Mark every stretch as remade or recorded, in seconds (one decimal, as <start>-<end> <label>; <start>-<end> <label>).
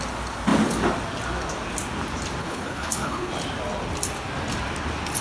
0.0-2.4 recorded; 2.4-3.3 remade; 3.3-5.2 recorded